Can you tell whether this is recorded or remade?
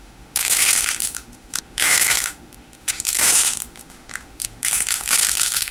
remade